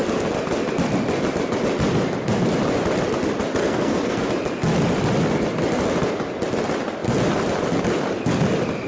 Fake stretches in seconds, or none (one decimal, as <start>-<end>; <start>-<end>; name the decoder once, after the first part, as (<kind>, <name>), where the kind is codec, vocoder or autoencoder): 3.6-4.3 (codec, SNAC)